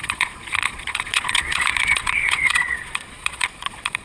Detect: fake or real fake